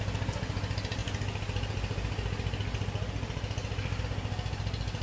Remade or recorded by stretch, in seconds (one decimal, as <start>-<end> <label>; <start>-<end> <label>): 0.0-5.0 recorded